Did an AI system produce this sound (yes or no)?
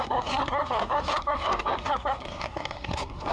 yes